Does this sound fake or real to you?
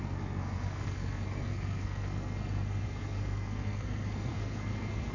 fake